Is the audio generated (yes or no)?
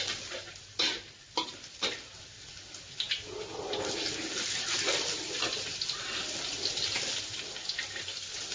no